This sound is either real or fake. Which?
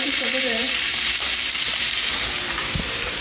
fake